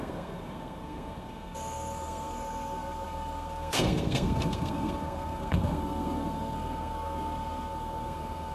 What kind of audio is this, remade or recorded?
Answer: remade